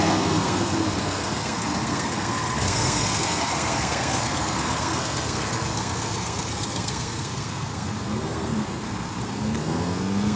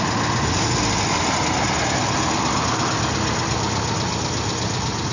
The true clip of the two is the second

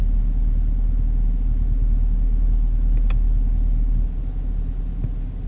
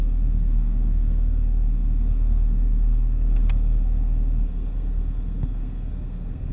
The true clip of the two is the first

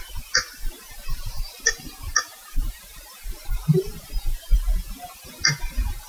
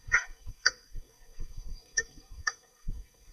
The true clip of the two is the first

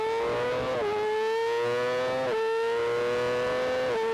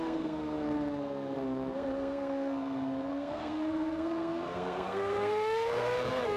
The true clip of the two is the first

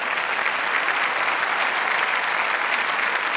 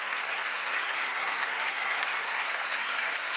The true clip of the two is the first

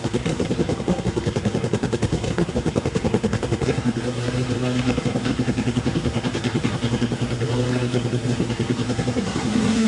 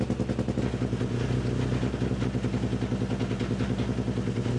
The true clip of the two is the second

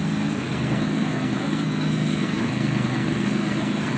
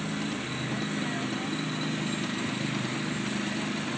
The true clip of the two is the second